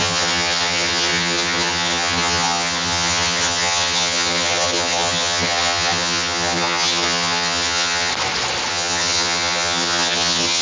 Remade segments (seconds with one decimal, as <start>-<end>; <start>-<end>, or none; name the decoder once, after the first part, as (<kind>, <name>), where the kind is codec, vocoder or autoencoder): 0.0-8.1 (vocoder, HiFi-GAN); 8.7-10.6